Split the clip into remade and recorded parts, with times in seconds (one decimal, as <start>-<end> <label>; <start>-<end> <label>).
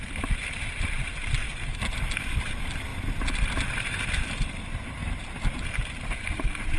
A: 0.0-6.8 recorded